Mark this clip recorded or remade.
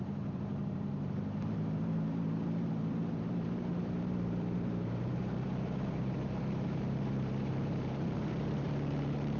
remade